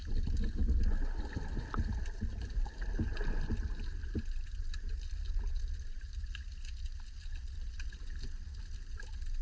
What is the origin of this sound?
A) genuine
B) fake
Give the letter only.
A